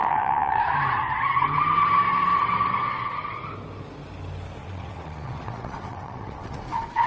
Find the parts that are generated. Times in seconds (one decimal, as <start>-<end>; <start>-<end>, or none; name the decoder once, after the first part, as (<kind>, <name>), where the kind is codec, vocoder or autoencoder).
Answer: 0.0-0.6 (vocoder, WaveNeXt); 4.6-7.1